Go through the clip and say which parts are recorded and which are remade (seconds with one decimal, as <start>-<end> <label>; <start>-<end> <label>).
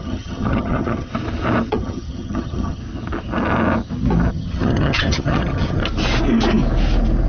0.0-1.1 remade; 1.1-1.7 recorded; 1.7-2.8 remade; 2.8-4.3 recorded; 4.3-5.8 remade; 5.8-7.3 recorded